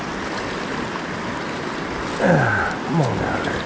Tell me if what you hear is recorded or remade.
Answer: recorded